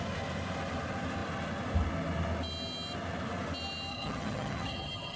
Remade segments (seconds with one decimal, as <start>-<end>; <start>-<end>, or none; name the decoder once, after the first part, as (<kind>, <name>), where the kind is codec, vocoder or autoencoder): 3.9-5.2 (vocoder, HiFi-GAN)